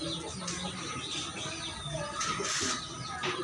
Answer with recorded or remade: recorded